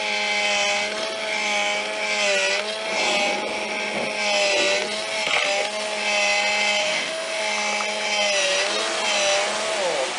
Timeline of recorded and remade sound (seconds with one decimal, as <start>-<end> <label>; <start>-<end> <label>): 0.0-6.8 recorded; 6.8-7.4 remade; 7.4-10.2 recorded